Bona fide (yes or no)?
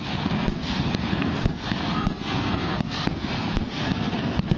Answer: no